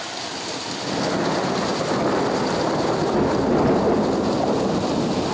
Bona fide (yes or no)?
yes